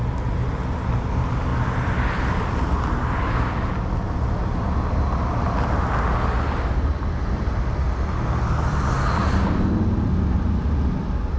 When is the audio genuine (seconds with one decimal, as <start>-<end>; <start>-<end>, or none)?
0.0-11.4